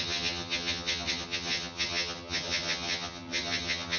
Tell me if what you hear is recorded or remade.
remade